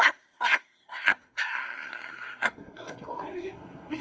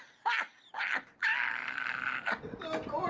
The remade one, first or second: first